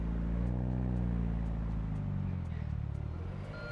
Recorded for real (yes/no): yes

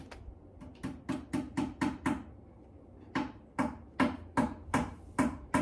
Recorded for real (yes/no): yes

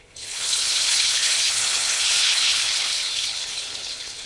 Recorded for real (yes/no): no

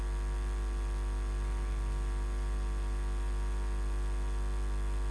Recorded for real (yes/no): yes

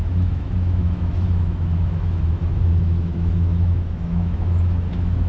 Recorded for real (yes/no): no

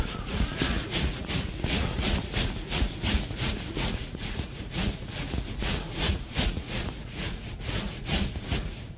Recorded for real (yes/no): no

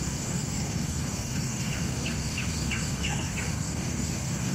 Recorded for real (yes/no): no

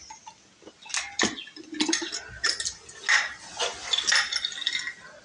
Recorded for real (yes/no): yes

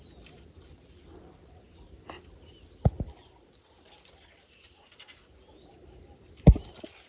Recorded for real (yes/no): yes